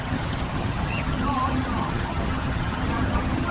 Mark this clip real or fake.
fake